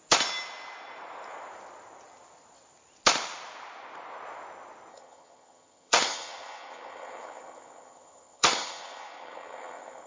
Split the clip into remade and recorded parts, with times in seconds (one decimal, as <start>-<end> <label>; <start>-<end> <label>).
0.0-4.9 recorded; 4.9-10.1 remade